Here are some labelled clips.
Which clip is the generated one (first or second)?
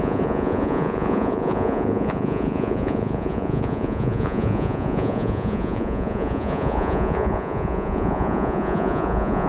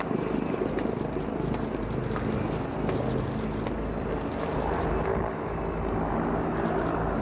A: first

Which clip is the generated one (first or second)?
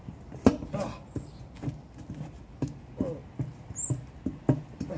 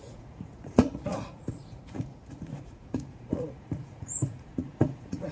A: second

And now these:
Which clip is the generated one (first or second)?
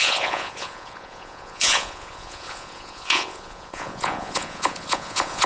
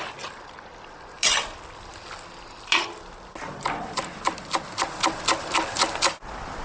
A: first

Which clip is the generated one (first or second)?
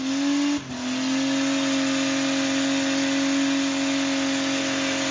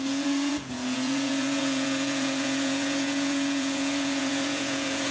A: second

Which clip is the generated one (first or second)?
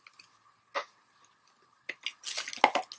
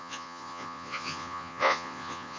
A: second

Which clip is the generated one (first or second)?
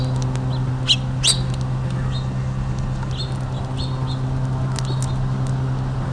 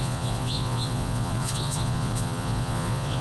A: second